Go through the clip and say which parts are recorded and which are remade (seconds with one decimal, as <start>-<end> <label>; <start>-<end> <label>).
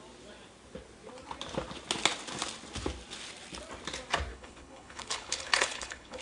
0.0-4.3 recorded; 4.3-6.2 remade